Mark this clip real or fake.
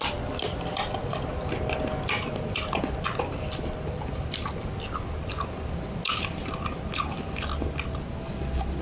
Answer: real